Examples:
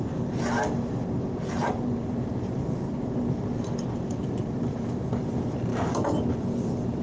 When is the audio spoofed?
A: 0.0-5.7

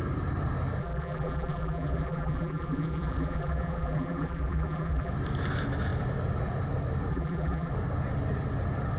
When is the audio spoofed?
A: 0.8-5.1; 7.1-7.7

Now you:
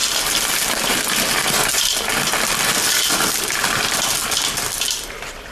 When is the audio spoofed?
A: none

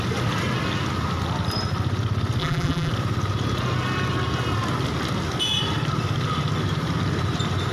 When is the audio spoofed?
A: 2.4-2.9

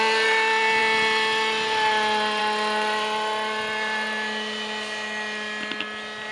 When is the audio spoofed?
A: none

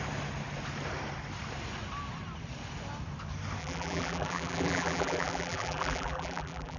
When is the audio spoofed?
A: 3.6-6.8

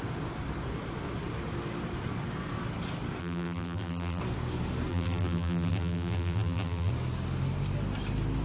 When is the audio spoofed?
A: 3.2-4.2; 4.9-6.9